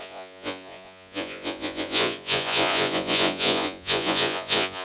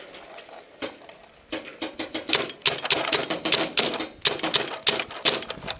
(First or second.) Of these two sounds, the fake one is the first